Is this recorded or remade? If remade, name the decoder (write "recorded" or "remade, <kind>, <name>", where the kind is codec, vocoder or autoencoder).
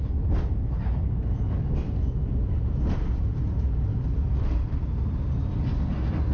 recorded